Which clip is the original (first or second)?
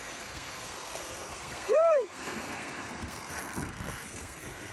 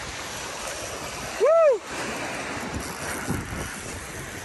second